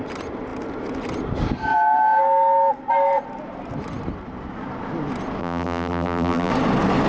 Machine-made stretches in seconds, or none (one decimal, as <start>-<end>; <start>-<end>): 5.4-6.5